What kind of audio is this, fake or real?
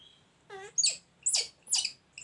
real